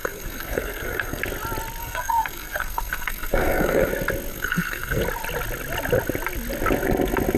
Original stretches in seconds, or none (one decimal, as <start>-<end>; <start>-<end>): 1.2-1.8; 3.9-4.3; 5.0-7.4